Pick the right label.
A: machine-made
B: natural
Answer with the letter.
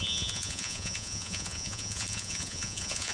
A